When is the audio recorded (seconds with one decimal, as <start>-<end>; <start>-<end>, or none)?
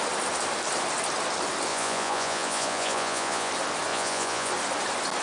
0.0-1.7; 3.5-3.9; 4.5-5.2